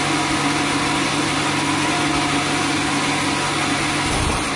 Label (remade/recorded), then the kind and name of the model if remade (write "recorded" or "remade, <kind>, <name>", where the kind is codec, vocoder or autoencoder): recorded